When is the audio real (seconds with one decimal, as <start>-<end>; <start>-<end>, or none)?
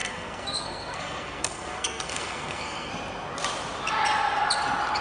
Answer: 2.9-5.0